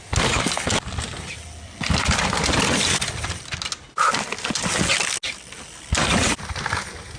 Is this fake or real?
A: real